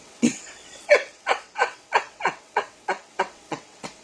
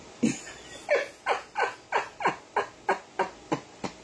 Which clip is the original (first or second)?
second